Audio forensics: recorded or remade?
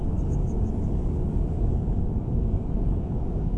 remade